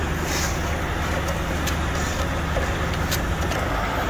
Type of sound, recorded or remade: recorded